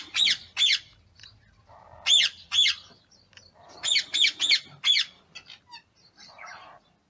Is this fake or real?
real